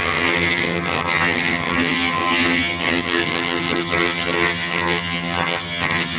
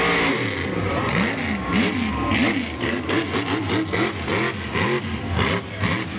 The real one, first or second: second